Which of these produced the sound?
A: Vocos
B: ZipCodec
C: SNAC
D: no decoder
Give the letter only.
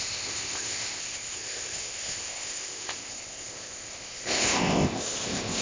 B